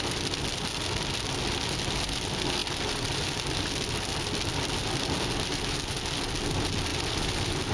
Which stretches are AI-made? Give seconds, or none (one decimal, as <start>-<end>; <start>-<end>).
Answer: 6.9-7.7